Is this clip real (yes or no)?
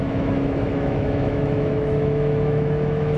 no